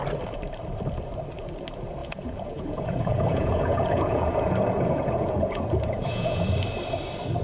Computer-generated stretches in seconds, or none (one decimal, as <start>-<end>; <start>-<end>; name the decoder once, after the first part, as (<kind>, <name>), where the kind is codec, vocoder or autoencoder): 2.0-6.4 (vocoder, Vocos)